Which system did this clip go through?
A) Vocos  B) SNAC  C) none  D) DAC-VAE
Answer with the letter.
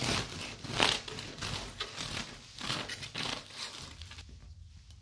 C